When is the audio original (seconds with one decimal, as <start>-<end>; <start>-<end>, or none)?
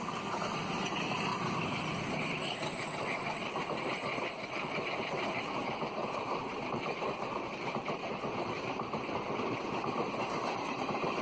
0.0-1.3; 1.9-4.1; 7.7-11.2